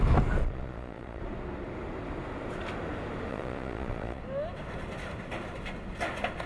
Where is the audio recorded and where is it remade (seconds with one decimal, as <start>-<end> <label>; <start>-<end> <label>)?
0.0-0.4 recorded; 0.4-1.2 remade; 1.2-3.3 recorded; 3.3-4.2 remade; 4.2-6.5 recorded

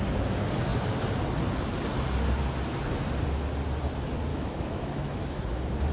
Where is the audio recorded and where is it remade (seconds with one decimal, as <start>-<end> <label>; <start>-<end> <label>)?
0.0-4.3 recorded; 4.3-5.4 remade; 5.4-5.9 recorded

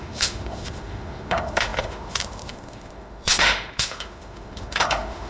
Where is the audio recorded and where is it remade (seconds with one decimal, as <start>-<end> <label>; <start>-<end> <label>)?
0.0-5.3 remade